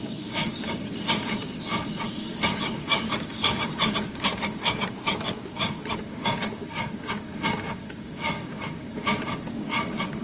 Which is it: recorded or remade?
remade